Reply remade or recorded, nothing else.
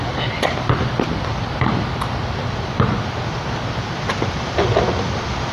recorded